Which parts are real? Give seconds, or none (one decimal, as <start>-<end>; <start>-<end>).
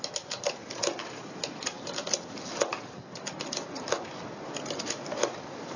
0.0-5.8